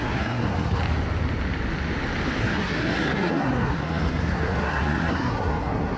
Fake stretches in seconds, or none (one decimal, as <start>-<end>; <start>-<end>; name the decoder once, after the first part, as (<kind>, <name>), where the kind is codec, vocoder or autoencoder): 0.0-0.8 (codec, SNAC); 2.4-6.0